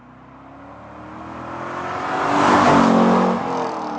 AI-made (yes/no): no